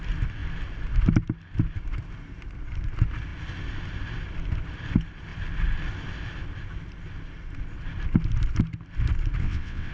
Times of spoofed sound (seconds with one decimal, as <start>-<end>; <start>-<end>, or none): 9.4-9.9